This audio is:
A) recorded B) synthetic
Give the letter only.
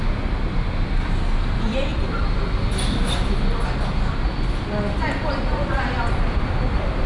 A